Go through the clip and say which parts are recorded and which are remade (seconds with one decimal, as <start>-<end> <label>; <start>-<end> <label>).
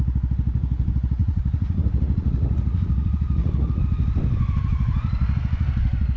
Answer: 0.0-1.2 recorded; 1.2-3.8 remade; 3.8-6.2 recorded